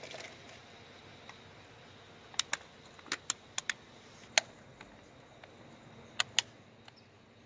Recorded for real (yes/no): yes